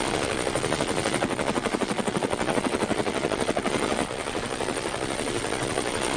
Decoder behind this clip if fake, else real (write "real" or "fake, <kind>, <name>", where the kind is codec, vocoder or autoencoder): fake, vocoder, Vocos